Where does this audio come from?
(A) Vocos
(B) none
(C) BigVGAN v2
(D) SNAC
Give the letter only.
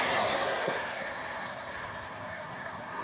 D